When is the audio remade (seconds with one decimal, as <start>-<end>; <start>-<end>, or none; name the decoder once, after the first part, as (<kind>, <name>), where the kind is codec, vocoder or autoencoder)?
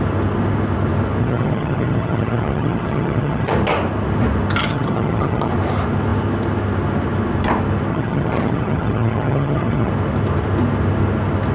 1.2-3.5 (vocoder, HiFi-GAN); 4.6-5.5; 7.9-9.9